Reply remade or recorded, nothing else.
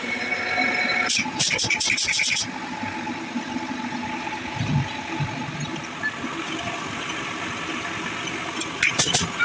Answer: recorded